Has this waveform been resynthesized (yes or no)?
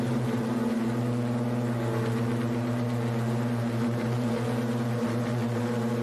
no